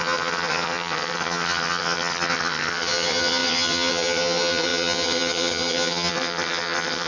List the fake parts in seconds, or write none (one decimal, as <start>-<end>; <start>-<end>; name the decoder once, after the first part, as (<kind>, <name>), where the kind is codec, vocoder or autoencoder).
0.0-7.1 (vocoder, HiFi-GAN)